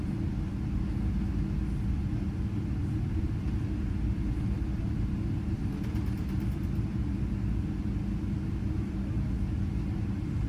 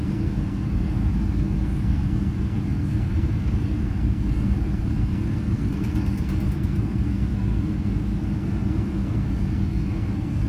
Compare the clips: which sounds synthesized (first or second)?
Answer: second